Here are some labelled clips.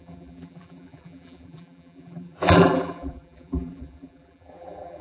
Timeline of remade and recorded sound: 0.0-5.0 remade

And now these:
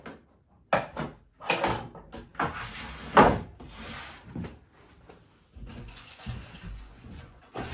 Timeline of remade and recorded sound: 0.0-5.6 recorded; 5.6-7.7 remade

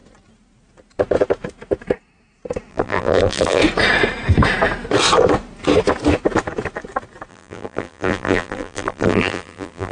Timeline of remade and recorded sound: 0.0-2.7 recorded; 2.7-3.6 remade; 3.6-7.3 recorded; 7.3-9.9 remade

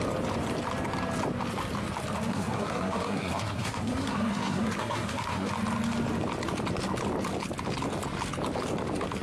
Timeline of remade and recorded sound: 0.0-2.3 recorded; 2.3-5.5 remade; 5.5-9.2 recorded